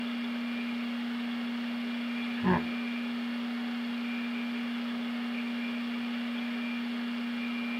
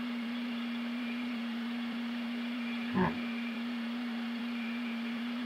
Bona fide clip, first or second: first